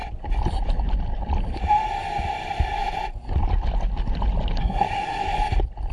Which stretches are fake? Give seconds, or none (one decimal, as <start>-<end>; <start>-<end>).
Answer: 4.6-5.2